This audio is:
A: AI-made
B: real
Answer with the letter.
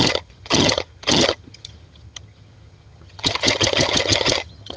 A